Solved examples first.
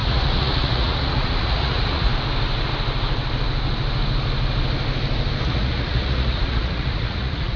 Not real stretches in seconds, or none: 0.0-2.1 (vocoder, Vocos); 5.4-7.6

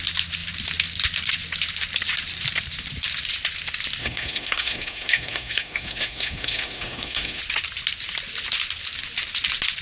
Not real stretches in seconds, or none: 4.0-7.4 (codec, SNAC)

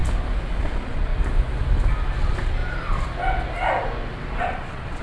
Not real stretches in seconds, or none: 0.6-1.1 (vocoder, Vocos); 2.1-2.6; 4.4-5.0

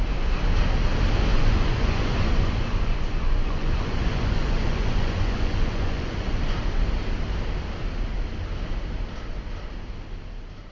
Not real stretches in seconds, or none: 1.3-6.4 (vocoder, Vocos)

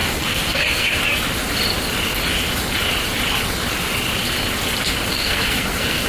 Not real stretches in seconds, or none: 0.0-1.0 (codec, SNAC); 5.1-6.1

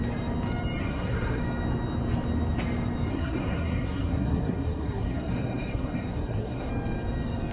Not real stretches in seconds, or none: 0.8-1.4 (codec, SNAC); 3.1-6.7